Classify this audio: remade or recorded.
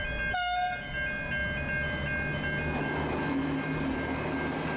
recorded